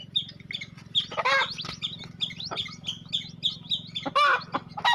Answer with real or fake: real